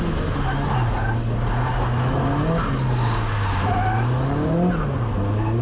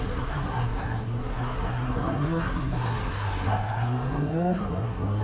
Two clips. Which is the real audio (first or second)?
first